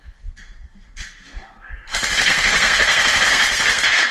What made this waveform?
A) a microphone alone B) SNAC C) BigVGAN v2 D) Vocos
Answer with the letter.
B